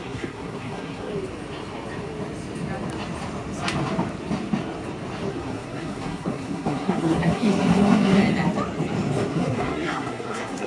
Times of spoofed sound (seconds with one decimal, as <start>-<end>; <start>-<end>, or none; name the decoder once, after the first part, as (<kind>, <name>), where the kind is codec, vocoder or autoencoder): 0.0-1.1 (codec, SNAC); 5.3-8.2; 9.3-10.7